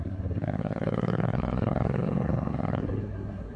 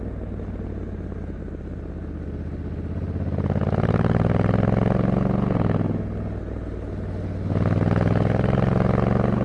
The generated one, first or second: first